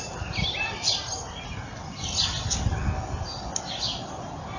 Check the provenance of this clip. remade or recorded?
recorded